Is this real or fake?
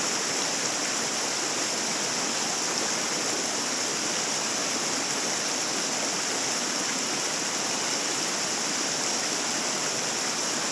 real